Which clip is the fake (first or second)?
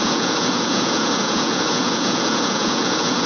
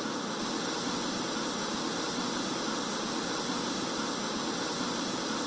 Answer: first